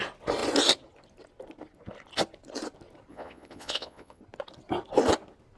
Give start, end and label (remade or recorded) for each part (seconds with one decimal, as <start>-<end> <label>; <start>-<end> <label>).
0.0-3.1 recorded; 3.1-4.2 remade; 4.2-5.6 recorded